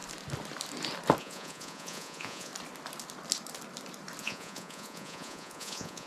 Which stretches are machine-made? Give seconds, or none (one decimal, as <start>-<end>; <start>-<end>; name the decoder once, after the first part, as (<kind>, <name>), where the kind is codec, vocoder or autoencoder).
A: 1.2-2.5 (vocoder, Vocos); 4.2-6.1